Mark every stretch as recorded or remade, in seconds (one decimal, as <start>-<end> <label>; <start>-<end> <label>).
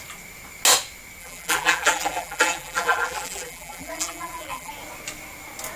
0.0-1.2 recorded; 1.2-4.7 remade; 4.7-5.8 recorded